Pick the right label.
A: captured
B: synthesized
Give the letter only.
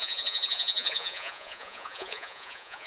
B